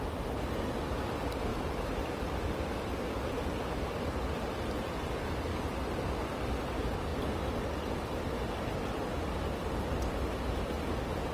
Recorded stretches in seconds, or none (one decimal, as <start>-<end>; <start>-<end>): 0.0-11.3